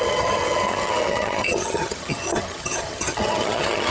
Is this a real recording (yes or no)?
no